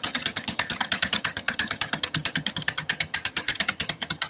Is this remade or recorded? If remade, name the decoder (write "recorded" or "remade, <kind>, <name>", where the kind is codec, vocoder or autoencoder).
remade, vocoder, HiFi-GAN